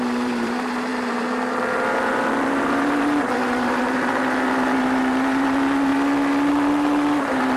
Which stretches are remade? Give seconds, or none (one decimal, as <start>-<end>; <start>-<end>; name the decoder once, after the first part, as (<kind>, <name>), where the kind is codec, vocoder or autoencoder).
0.0-5.9 (vocoder, BigVGAN v2); 6.5-7.6